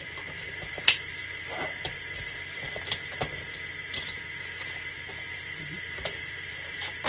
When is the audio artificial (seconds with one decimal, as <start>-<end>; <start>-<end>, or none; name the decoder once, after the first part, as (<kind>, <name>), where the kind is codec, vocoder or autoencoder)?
0.0-1.2 (vocoder, BigVGAN v2); 5.3-7.1

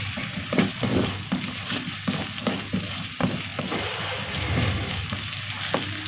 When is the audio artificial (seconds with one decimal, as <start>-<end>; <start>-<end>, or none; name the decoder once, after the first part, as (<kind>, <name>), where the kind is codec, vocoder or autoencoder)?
0.0-0.9 (vocoder, BigVGAN v2); 2.9-3.5

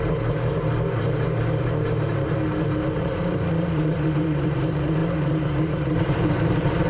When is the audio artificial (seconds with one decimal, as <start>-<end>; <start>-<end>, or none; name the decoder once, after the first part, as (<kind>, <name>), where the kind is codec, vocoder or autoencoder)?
0.0-6.9 (vocoder, BigVGAN v2)

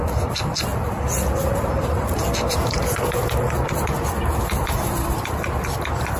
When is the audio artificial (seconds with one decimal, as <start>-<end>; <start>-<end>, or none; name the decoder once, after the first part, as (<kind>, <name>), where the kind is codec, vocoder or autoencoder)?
0.0-0.7 (vocoder, BigVGAN v2); 4.4-6.2

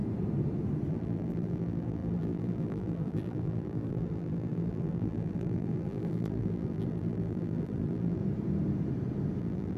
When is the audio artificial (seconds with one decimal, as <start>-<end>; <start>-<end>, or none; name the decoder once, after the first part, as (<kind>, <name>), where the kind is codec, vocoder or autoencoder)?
0.9-8.2 (vocoder, BigVGAN v2); 9.4-9.8